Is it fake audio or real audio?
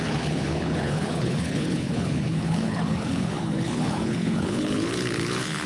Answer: fake